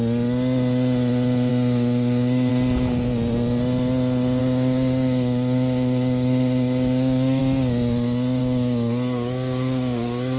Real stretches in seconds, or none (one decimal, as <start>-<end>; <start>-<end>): 0.0-1.5; 2.5-4.4; 7.4-8.4